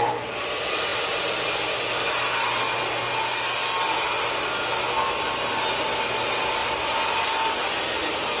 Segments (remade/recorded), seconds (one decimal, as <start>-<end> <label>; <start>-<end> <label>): 0.0-8.4 recorded